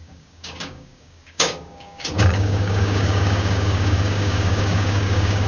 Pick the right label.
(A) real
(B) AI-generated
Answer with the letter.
B